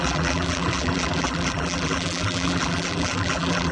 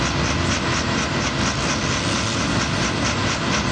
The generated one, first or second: first